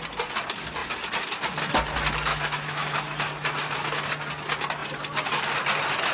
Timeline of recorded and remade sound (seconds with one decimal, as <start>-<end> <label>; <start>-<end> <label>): 0.0-2.3 recorded; 2.3-3.2 remade; 3.2-6.1 recorded